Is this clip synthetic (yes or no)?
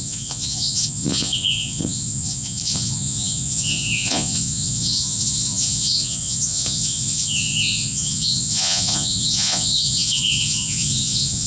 yes